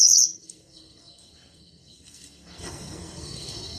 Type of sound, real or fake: fake